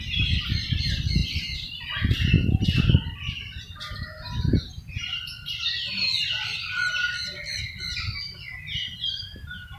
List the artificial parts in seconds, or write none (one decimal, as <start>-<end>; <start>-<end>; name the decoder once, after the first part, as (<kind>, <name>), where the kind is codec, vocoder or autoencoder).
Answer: none